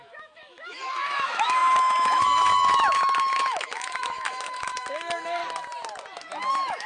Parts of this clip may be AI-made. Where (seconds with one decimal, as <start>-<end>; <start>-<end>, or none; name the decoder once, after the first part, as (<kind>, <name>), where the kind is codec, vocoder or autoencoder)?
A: 0.0-5.4 (autoencoder, DAC-VAE); 6.5-6.9